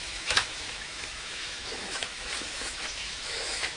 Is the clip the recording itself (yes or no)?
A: no